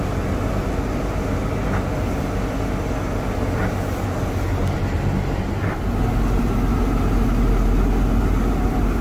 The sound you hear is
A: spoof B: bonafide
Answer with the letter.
B